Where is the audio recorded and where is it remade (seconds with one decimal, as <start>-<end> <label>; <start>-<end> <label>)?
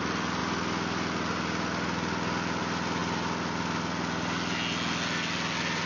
0.0-5.9 recorded